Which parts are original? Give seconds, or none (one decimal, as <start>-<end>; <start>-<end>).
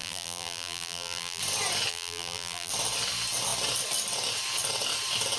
1.4-1.9; 2.7-5.4